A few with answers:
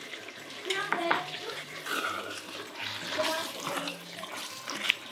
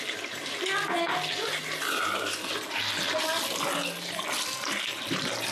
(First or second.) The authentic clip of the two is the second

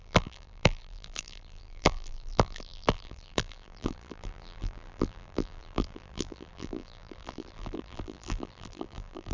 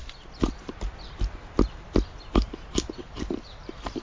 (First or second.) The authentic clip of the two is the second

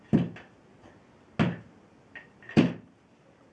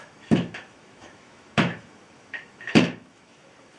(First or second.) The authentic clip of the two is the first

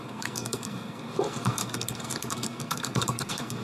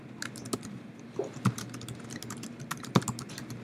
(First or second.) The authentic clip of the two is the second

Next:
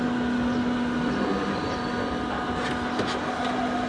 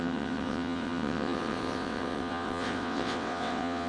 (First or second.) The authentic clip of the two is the first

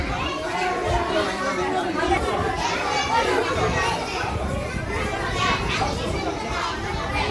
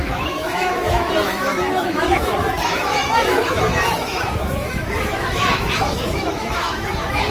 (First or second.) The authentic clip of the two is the first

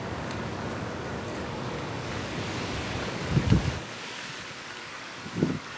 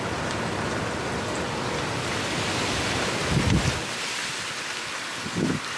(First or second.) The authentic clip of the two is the second